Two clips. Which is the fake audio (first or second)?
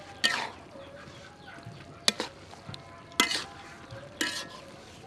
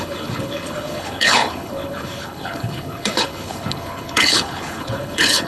second